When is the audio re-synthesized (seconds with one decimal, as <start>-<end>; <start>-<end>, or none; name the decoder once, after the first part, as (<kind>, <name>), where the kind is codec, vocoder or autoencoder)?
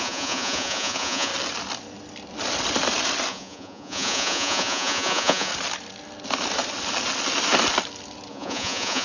0.0-1.3 (vocoder, Vocos); 3.3-5.5; 8.3-9.0